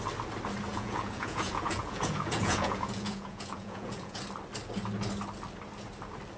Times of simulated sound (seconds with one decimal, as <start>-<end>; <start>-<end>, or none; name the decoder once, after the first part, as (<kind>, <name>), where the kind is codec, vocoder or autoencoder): 0.7-4.2 (vocoder, Vocos)

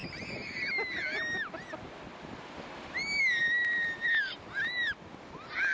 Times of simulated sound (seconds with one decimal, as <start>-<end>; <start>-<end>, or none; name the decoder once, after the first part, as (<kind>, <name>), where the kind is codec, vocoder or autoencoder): none

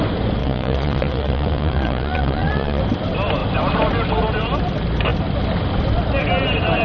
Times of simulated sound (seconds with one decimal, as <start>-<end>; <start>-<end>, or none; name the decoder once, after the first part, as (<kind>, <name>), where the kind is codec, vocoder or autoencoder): 0.4-2.8 (vocoder, Vocos)

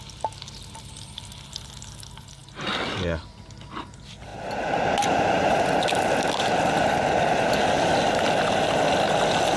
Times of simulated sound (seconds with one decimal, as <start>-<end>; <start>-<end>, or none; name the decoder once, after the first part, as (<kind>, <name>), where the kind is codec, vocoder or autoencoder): none

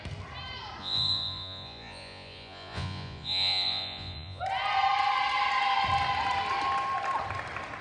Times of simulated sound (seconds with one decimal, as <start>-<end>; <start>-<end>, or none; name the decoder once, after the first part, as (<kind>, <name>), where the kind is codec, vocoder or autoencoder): 0.8-4.4 (vocoder, Vocos)